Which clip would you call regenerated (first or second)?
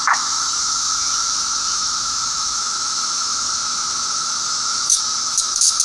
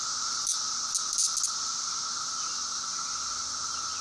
first